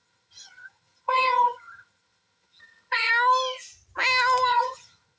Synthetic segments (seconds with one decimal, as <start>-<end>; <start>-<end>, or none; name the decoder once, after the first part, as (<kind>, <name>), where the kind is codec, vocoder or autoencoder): 0.0-3.1 (vocoder, HiFi-GAN); 4.5-5.2